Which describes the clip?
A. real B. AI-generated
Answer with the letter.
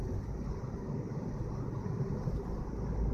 A